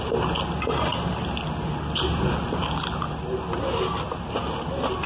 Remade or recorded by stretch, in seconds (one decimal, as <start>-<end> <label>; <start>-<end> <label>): 0.0-5.1 recorded